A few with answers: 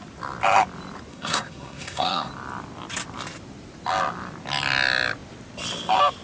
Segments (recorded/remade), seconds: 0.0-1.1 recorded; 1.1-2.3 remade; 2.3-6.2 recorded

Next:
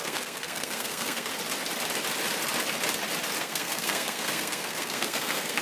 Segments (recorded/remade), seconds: 0.0-1.3 remade; 1.3-3.4 recorded; 3.4-5.6 remade

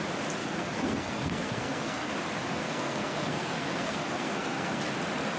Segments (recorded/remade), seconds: 0.0-0.4 recorded; 0.4-2.1 remade; 2.1-2.6 recorded; 2.6-4.8 remade; 4.8-5.4 recorded

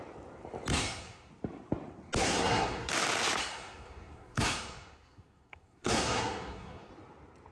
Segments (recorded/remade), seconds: 0.0-0.7 recorded; 0.7-1.3 remade; 1.3-2.2 recorded; 2.2-2.9 remade; 2.9-3.4 recorded; 3.4-6.9 remade; 6.9-7.5 recorded

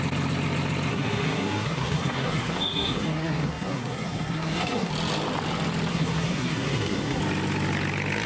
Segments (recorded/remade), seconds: 0.0-0.9 recorded; 0.9-4.9 remade; 4.9-5.9 recorded; 5.9-7.2 remade; 7.2-8.3 recorded